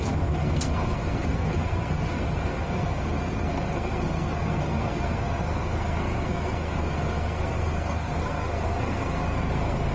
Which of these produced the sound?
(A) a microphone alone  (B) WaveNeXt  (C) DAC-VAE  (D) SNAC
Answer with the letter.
D